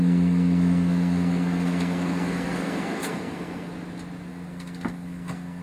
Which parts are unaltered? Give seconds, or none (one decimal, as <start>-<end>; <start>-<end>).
3.7-4.3